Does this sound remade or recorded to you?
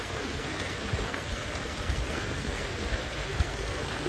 remade